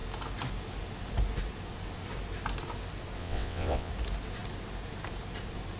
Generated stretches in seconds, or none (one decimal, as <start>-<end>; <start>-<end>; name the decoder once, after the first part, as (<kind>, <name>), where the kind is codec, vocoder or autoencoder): 3.2-3.9 (vocoder, WaveNeXt)

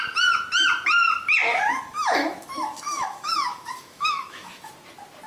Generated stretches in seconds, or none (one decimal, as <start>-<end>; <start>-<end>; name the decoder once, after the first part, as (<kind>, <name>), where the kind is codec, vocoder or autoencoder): 1.5-4.7 (autoencoder, DAC-VAE)

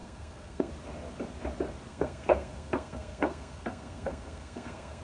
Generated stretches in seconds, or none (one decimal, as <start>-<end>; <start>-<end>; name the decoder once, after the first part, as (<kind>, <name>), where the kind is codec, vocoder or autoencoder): 0.0-0.7 (codec, SNAC); 1.9-5.0

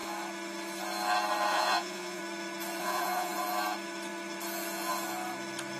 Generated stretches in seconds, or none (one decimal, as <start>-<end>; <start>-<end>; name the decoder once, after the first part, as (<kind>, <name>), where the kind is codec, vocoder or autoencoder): 1.5-2.2 (vocoder, Vocos); 2.8-3.3

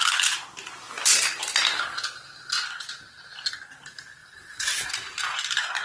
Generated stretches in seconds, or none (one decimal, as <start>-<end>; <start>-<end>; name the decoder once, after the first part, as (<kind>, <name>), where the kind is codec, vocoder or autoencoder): 4.2-4.9 (vocoder, WaveNeXt)

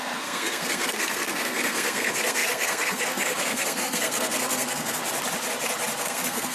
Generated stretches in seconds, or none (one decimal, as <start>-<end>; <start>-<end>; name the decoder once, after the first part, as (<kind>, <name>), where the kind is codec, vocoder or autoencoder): 0.0-5.0 (codec, SNAC); 6.0-6.5